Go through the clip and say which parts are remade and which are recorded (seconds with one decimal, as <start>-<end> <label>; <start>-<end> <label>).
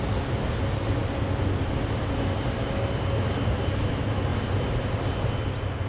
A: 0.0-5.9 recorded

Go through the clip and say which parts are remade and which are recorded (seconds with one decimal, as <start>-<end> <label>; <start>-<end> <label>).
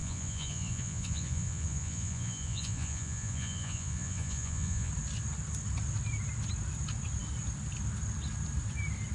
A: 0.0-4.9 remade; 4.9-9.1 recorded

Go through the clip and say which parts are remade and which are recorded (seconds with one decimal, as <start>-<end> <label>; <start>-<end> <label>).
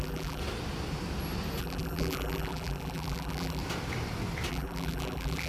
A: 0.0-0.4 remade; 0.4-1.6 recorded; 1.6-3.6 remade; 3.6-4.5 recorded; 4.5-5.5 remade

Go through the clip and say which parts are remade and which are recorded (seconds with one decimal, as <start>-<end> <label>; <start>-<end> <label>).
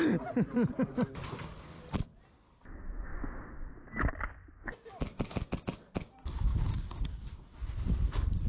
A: 0.0-6.5 recorded; 6.5-7.0 remade; 7.0-8.5 recorded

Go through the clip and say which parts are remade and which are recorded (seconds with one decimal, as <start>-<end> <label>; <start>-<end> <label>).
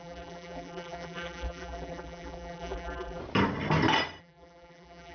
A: 0.0-3.2 remade; 3.2-4.2 recorded; 4.2-5.1 remade